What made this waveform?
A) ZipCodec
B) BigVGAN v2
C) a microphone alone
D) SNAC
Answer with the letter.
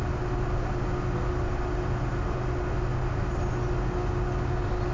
C